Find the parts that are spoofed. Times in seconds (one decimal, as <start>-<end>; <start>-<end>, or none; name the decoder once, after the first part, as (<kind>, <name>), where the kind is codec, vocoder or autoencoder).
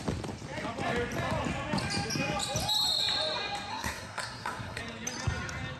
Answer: 3.7-4.8 (codec, SNAC)